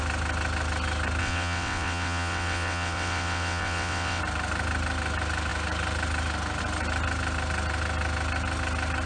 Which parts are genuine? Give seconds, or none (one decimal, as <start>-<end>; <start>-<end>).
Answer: 0.0-1.2; 4.2-9.1